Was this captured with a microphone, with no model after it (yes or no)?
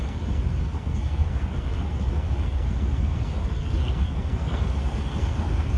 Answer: no